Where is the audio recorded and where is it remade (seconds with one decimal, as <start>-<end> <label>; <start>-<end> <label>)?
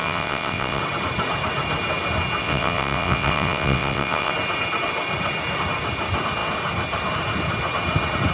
0.0-0.8 remade; 0.8-2.4 recorded; 2.4-4.3 remade; 4.3-8.3 recorded